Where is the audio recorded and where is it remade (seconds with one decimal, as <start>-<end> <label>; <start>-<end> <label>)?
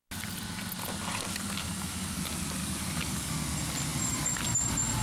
0.0-1.6 recorded; 1.6-2.2 remade; 2.2-2.6 recorded; 2.6-3.3 remade; 3.3-5.0 recorded